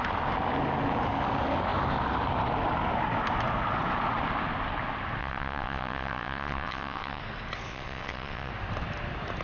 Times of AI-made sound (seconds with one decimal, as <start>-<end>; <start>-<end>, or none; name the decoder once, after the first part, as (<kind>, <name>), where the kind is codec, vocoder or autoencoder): 5.2-7.2 (vocoder, WaveNeXt); 7.7-8.5